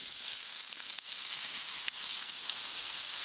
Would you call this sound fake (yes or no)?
yes